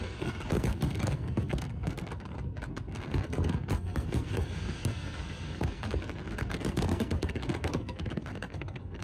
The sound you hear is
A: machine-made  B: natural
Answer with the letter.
A